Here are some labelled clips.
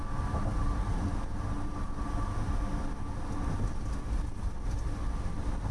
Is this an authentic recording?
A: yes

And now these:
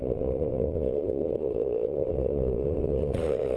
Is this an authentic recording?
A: no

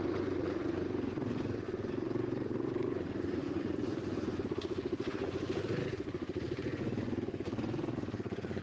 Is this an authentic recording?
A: no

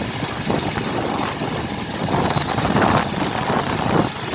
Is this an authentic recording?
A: yes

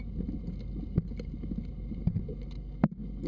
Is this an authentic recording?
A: yes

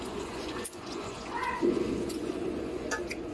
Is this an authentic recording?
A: no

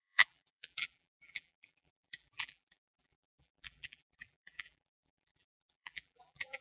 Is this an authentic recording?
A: no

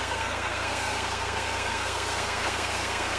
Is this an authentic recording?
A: no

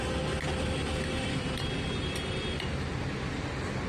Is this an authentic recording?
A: yes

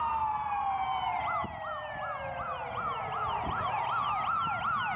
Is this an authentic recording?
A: yes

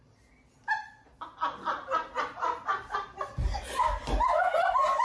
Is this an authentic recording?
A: yes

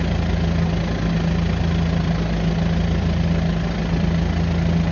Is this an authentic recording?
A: yes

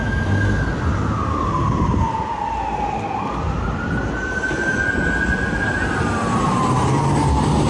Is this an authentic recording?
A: yes